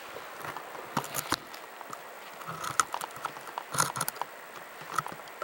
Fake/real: real